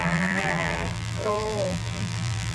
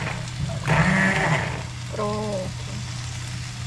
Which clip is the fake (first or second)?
first